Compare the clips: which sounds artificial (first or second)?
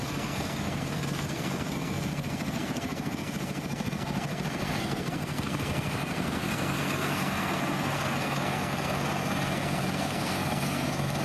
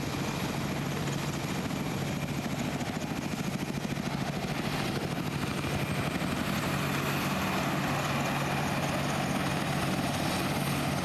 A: first